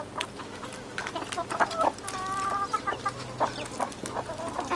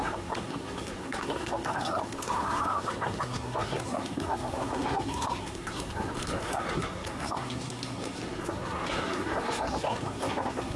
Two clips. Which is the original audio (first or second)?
first